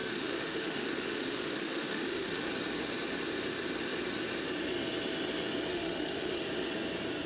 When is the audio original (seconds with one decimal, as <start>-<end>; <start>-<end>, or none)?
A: 2.5-5.7; 6.4-7.3